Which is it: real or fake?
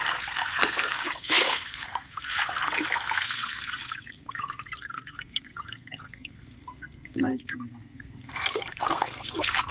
fake